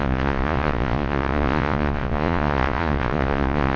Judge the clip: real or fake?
fake